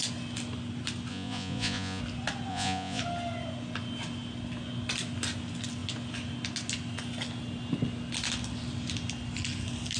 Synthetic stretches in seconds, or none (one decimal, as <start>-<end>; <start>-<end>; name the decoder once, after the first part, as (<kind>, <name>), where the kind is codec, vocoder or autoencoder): 1.1-2.0 (vocoder, Vocos); 2.5-3.0